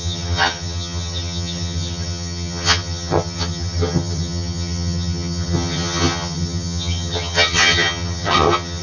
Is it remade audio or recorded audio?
remade